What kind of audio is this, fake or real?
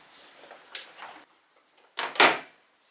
real